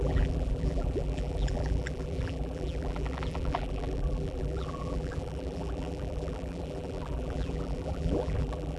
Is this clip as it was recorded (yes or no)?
no